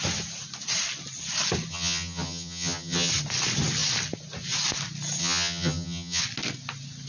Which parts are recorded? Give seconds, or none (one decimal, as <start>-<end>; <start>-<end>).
0.0-1.7; 3.1-5.2; 6.2-7.1